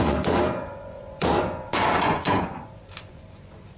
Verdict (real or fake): fake